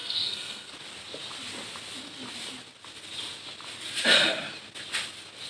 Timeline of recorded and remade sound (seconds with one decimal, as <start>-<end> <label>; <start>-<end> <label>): 0.0-0.7 remade; 0.7-5.5 recorded